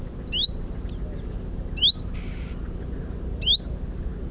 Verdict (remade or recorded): recorded